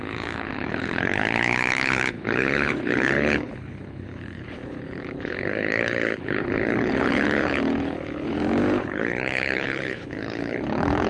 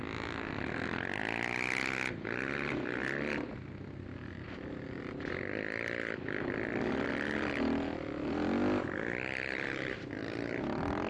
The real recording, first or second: second